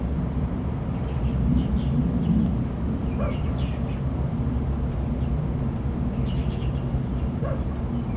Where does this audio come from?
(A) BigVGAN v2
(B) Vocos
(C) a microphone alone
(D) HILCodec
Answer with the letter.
C